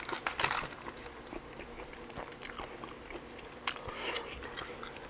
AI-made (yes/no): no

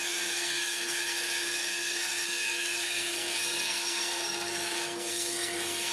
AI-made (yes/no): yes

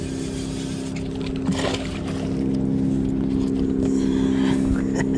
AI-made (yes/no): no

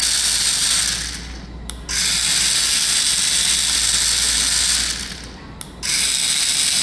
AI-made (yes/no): no